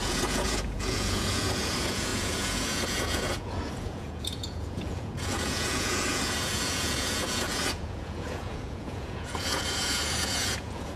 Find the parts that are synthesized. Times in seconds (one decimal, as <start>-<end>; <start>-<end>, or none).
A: 0.0-11.0